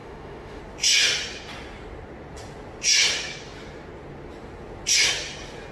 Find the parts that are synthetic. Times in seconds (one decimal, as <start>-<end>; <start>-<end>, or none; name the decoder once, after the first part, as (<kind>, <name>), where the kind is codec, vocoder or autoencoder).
0.0-0.6 (autoencoder, DAC-VAE)